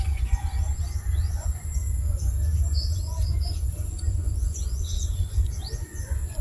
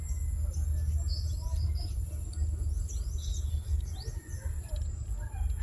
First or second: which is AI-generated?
first